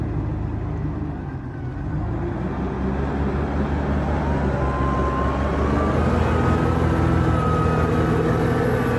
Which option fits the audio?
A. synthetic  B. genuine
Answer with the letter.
B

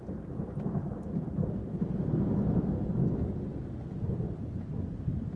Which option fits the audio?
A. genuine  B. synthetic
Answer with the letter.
A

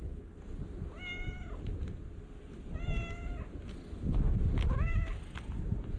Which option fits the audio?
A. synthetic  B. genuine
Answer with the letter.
B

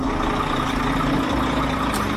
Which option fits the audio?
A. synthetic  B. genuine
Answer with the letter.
B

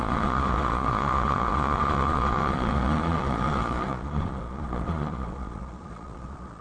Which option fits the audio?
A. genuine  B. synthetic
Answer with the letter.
B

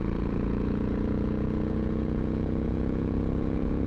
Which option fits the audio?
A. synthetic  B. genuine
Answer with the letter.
A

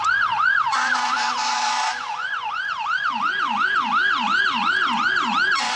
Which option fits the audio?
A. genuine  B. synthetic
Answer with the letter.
B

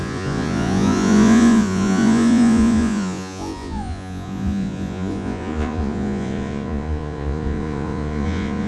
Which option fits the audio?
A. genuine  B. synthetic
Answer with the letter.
B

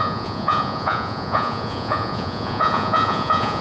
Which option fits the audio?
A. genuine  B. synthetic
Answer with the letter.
B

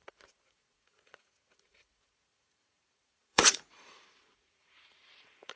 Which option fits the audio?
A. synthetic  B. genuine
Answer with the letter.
A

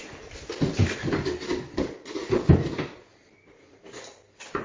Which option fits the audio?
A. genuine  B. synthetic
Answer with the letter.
A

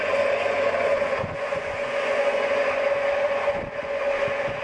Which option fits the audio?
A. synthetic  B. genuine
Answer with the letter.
A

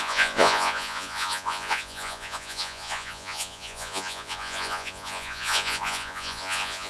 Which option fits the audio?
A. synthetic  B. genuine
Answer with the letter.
A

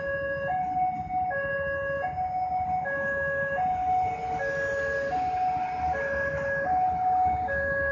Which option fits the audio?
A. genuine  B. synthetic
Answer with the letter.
A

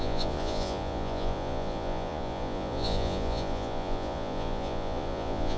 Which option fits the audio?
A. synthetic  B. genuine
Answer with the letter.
A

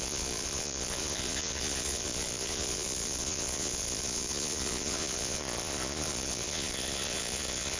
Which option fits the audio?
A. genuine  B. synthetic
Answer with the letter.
B